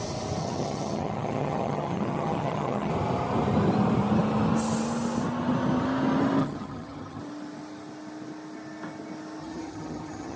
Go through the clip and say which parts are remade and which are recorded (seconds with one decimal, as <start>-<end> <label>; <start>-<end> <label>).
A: 0.0-0.4 recorded; 0.4-2.9 remade; 2.9-6.4 recorded; 6.4-7.2 remade; 7.2-9.4 recorded; 9.4-10.4 remade